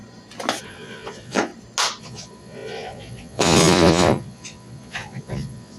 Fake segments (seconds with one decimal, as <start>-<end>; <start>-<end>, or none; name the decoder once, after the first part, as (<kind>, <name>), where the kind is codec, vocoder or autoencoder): 0.6-1.5 (vocoder, Vocos); 2.0-5.8